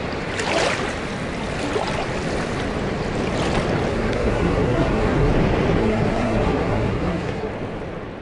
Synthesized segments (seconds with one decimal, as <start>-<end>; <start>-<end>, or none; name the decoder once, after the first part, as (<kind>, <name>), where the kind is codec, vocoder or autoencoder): 3.9-5.3 (codec, SNAC); 5.8-7.5